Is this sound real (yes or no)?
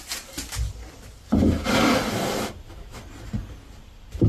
yes